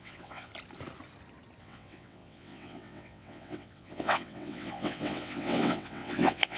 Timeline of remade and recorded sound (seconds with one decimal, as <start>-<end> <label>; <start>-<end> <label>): 0.0-0.5 remade; 0.5-1.6 recorded; 1.6-6.6 remade